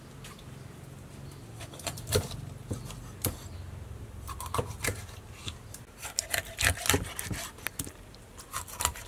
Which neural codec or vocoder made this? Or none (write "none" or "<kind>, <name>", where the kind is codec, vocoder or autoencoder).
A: none